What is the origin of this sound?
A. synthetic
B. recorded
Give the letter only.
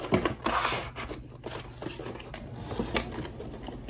B